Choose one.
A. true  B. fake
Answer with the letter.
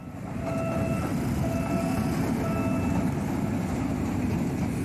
A